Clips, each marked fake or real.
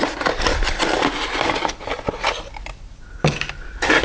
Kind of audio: real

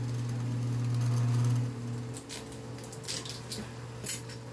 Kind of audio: real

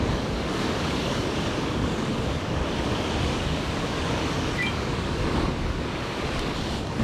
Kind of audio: fake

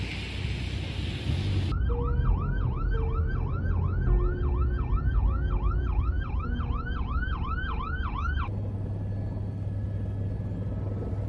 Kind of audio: real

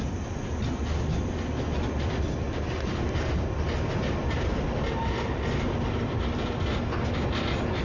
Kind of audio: real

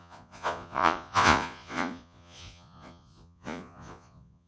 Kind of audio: fake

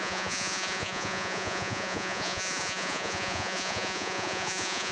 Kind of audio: fake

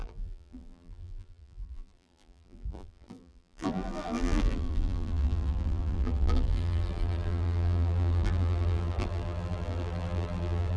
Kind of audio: fake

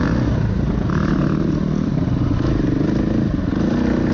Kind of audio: real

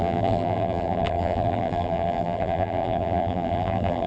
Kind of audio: fake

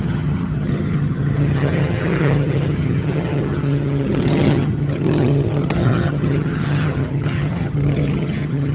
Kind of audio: fake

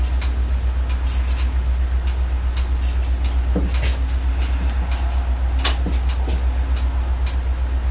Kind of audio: real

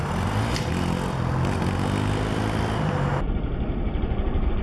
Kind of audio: real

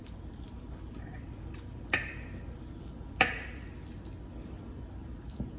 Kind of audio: real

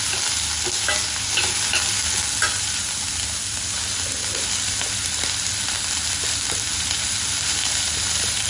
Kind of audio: real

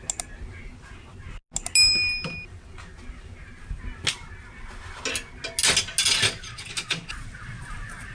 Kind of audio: real